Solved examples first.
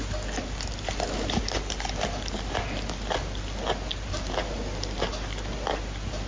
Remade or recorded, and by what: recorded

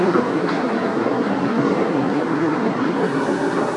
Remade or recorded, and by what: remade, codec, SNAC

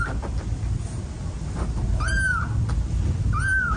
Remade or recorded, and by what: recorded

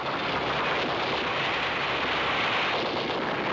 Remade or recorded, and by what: recorded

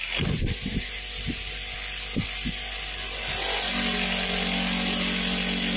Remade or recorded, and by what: recorded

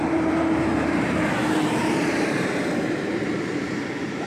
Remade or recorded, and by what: remade, vocoder, BigVGAN v2